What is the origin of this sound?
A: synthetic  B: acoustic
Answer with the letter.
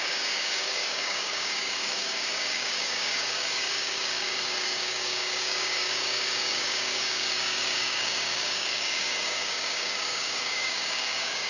A